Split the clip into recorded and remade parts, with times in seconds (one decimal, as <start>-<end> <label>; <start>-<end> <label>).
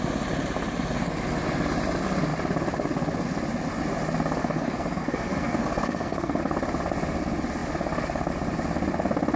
0.0-4.4 recorded; 4.4-6.4 remade; 6.4-9.4 recorded